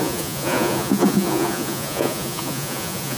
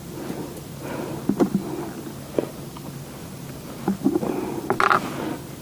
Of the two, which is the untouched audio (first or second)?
second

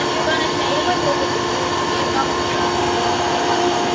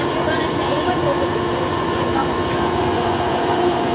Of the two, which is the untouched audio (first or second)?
first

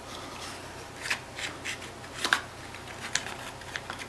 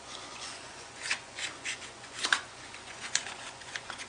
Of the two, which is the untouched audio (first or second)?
first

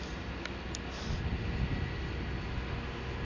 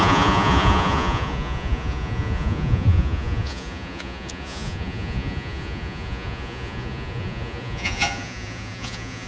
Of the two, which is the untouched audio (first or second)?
first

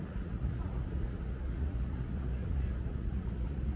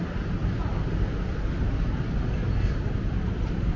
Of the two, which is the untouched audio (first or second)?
second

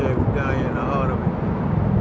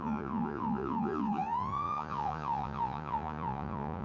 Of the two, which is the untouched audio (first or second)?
first